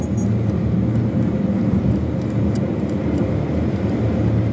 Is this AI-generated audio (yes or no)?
no